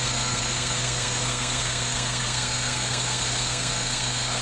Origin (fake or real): fake